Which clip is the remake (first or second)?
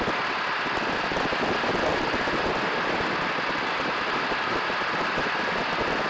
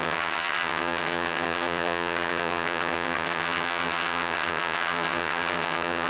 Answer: second